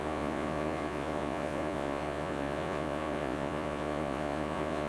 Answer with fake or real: fake